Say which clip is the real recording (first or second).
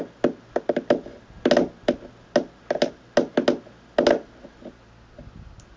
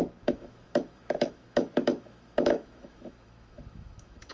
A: first